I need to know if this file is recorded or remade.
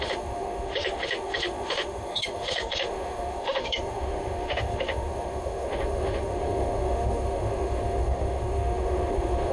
remade